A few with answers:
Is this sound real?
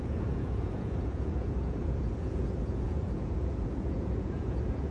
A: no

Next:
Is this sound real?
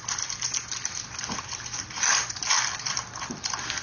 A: no